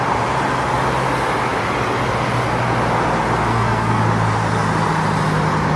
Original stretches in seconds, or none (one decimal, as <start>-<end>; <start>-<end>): 0.0-3.5; 4.0-5.8